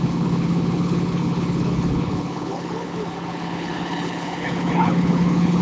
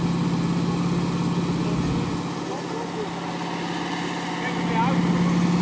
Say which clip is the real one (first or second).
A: second